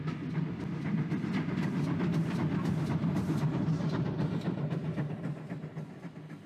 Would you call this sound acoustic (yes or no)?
yes